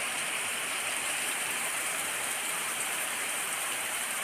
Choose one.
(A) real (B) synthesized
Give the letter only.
B